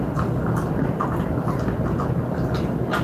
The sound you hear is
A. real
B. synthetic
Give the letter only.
A